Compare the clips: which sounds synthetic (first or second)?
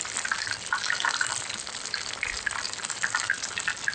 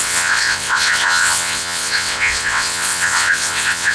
second